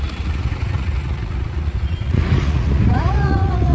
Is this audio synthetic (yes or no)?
yes